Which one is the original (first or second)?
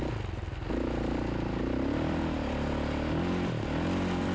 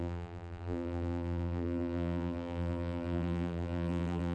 first